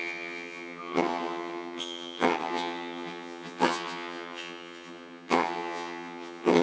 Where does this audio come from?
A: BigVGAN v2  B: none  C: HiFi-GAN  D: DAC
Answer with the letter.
C